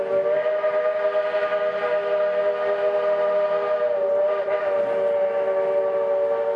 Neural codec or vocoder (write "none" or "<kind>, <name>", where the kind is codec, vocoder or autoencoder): none